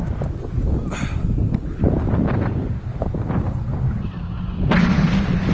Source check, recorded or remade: recorded